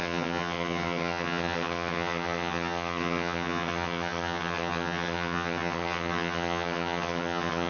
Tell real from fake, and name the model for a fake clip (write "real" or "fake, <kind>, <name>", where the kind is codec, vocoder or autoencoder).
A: fake, vocoder, HiFi-GAN